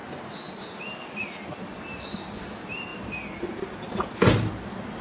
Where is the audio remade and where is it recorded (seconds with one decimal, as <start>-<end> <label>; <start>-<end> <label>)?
0.0-5.0 recorded

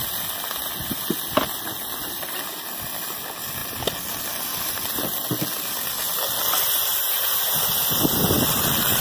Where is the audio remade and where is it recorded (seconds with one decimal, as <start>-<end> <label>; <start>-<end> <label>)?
0.0-9.0 recorded

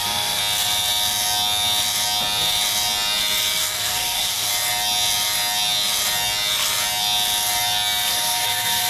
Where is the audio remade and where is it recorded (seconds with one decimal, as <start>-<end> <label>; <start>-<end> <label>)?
0.0-0.4 remade; 0.4-3.6 recorded; 3.6-4.5 remade; 4.5-8.1 recorded; 8.1-8.9 remade

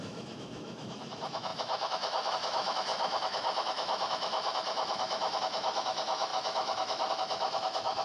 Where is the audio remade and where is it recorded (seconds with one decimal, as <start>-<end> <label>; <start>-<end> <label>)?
0.0-8.0 remade